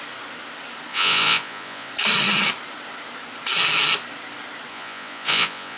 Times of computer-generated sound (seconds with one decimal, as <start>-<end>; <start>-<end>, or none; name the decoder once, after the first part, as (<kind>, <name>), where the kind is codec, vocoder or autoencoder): 0.9-1.9 (vocoder, Vocos); 4.7-5.8